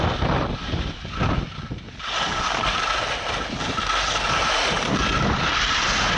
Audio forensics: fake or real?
real